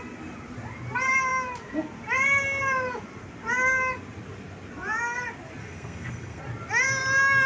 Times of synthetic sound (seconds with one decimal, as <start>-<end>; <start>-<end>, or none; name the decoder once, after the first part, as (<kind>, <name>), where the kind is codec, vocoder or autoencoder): 5.6-6.4 (codec, SNAC)